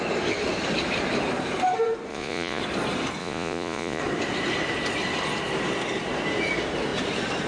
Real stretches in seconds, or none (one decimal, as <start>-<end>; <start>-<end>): 0.0-2.1; 2.6-3.2; 4.0-7.5